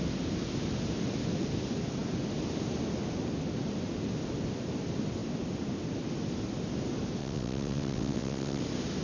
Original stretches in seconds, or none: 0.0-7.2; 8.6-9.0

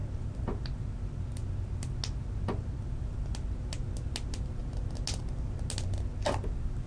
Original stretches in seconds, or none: 0.0-6.9

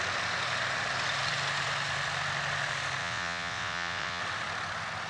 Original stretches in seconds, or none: 0.0-3.0; 4.2-5.1

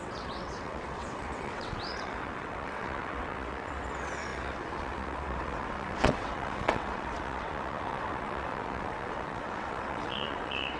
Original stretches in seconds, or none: none

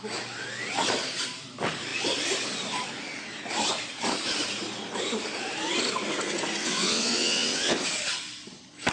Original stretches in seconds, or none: 0.0-6.6; 7.8-8.9